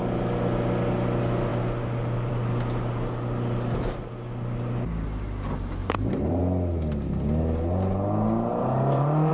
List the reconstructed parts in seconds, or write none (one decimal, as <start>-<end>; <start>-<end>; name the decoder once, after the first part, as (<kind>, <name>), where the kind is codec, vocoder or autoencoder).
5.8-6.4 (vocoder, BigVGAN v2); 8.5-9.3

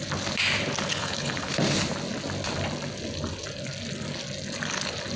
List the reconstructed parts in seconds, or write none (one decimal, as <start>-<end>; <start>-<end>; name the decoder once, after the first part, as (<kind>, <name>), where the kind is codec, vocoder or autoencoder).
0.9-1.5 (codec, HILCodec)

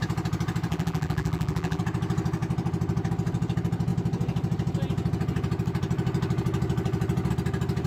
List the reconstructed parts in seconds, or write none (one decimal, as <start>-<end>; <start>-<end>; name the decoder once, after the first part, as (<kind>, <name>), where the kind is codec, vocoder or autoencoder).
0.7-1.8 (vocoder, BigVGAN v2)

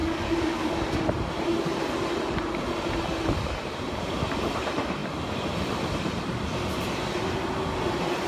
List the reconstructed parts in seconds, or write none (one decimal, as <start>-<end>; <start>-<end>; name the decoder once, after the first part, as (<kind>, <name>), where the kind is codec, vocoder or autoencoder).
0.0-0.8 (codec, DAC)

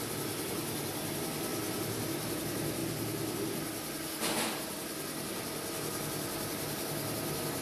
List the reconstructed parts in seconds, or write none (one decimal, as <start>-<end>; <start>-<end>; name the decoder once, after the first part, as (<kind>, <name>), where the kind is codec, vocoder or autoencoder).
none

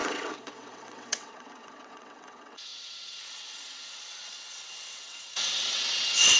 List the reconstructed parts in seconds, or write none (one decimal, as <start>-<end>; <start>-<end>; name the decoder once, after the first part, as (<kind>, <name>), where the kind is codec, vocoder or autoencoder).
0.0-6.4 (vocoder, WaveNeXt)

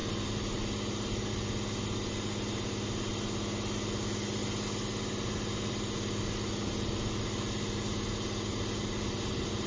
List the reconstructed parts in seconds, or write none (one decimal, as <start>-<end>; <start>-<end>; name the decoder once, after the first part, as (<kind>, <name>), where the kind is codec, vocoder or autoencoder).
none